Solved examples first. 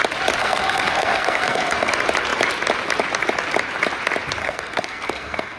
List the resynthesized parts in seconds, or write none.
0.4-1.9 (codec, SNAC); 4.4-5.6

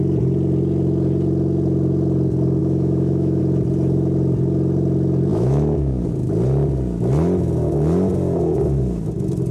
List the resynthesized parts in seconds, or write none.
2.6-3.4 (autoencoder, DAC-VAE); 5.3-6.0

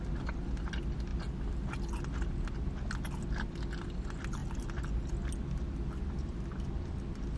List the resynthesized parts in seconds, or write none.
none

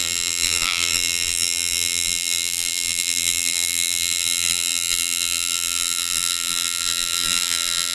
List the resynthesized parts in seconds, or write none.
0.0-7.9 (vocoder, BigVGAN v2)

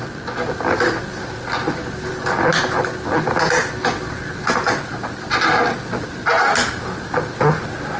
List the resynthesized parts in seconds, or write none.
none

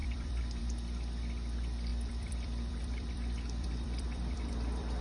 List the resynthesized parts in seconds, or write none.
0.0-0.6 (vocoder, BigVGAN v2); 1.9-5.0

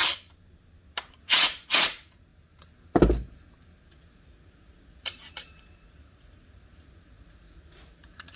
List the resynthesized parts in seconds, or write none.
1.1-2.3 (vocoder, Vocos); 3.9-8.4